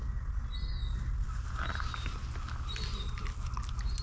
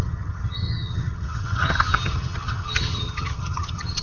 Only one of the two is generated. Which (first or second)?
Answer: second